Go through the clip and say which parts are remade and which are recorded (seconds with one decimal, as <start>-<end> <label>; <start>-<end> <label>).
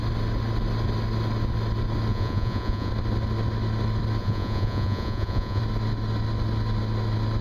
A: 0.0-2.1 recorded; 2.1-2.9 remade; 2.9-4.2 recorded; 4.2-5.6 remade; 5.6-7.4 recorded